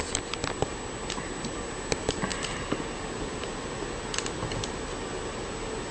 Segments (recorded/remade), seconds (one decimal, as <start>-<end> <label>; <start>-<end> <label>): 0.0-5.9 recorded